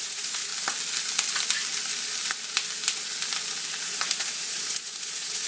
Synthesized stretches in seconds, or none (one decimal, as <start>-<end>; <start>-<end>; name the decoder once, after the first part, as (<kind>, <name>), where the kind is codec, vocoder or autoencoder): 0.0-0.5 (vocoder, Vocos); 3.8-5.5